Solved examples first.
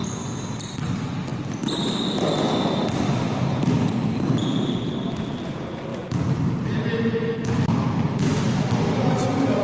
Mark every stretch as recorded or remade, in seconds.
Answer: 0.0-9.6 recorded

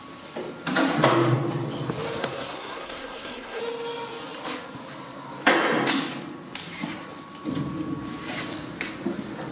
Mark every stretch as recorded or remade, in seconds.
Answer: 0.0-2.2 recorded; 2.2-3.6 remade; 3.6-9.5 recorded

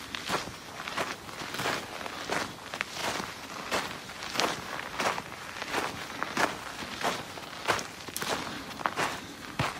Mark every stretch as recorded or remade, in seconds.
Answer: 0.0-9.8 recorded

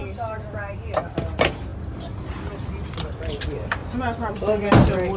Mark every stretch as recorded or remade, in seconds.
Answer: 0.0-3.8 recorded; 3.8-4.3 remade; 4.3-5.2 recorded

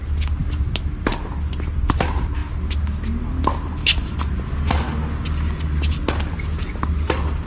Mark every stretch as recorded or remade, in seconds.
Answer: 0.0-7.5 recorded

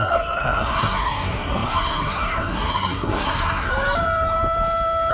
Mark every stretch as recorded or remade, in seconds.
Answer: 0.0-3.7 remade; 3.7-5.1 recorded

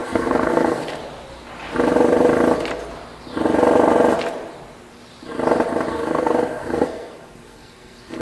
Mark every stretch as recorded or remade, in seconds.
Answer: 0.0-1.0 remade; 1.0-5.9 recorded; 5.9-8.2 remade